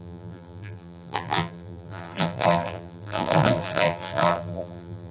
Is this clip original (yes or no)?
no